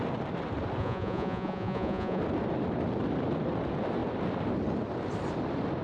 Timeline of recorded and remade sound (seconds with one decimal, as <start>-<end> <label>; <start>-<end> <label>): 0.0-0.8 recorded; 0.8-2.2 remade; 2.2-5.8 recorded